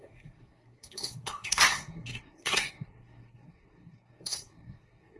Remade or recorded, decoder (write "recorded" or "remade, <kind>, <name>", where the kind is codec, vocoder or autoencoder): remade, codec, SNAC